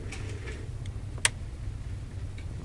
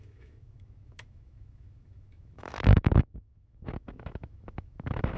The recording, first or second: first